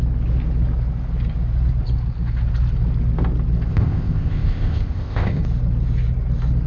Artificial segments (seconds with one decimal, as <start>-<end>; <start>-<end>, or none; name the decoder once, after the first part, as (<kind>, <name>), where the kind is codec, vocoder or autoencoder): 3.7-5.4 (codec, ZipCodec)